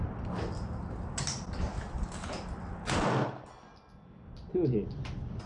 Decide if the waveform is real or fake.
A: real